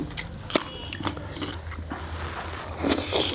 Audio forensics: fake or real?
real